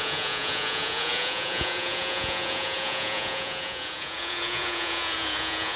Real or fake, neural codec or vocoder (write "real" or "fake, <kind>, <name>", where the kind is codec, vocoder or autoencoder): fake, vocoder, Vocos